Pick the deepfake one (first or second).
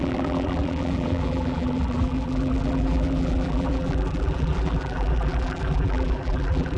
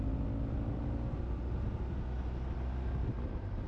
first